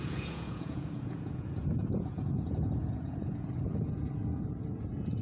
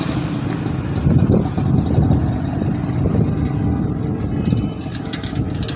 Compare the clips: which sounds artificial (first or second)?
first